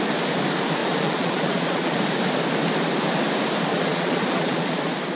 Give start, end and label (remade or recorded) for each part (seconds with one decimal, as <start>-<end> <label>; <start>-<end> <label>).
0.0-0.8 recorded; 0.8-2.0 remade; 2.0-3.7 recorded; 3.7-4.8 remade; 4.8-5.2 recorded